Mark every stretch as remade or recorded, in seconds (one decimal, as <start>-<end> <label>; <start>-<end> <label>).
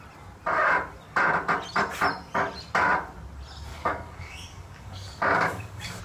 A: 0.0-3.7 recorded; 3.7-6.0 remade